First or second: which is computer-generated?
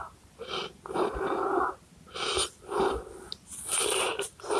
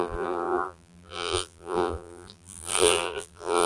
second